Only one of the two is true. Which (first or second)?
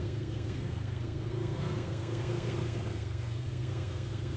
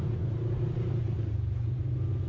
second